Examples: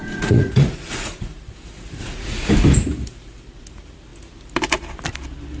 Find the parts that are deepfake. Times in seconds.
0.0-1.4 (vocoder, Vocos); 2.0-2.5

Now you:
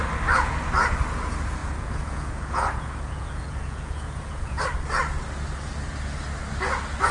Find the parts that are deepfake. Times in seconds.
1.6-4.6 (vocoder, Vocos)

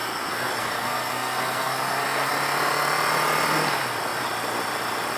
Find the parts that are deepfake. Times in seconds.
0.0-2.3 (codec, SNAC)

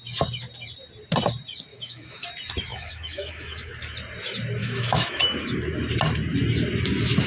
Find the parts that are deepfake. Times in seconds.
1.7-2.3 (autoencoder, DAC-VAE); 2.7-3.7; 4.6-5.2

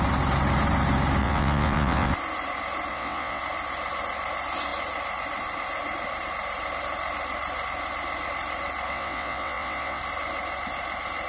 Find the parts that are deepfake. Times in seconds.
1.2-2.1 (vocoder, WaveNeXt); 2.9-3.4; 8.9-10.0

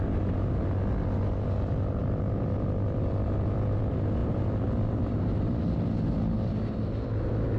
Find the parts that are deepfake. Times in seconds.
2.0-3.8 (vocoder, BigVGAN v2); 4.2-5.7

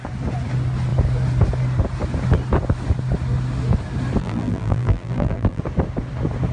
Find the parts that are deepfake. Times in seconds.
4.2-5.6 (vocoder, BigVGAN v2)

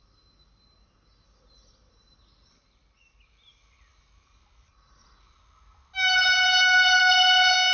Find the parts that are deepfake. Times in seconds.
none